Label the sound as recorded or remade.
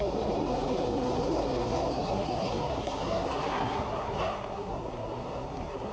remade